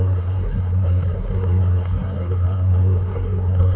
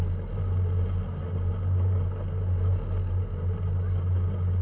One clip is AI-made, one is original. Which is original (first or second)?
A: second